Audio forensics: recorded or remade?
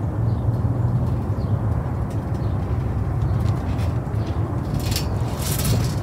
recorded